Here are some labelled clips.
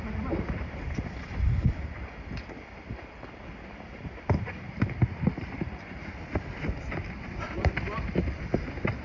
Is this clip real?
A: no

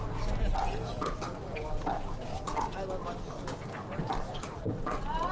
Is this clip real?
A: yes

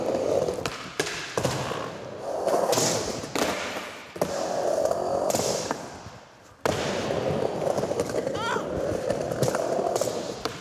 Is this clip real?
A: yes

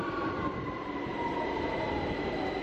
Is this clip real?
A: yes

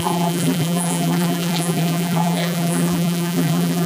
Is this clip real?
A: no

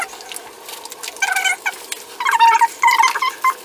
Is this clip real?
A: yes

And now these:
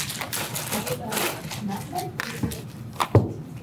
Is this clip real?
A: no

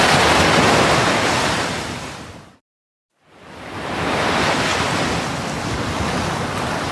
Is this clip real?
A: no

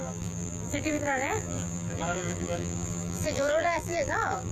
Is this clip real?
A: no